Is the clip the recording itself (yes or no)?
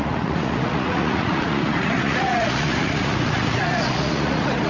no